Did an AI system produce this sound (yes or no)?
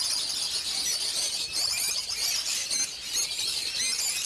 no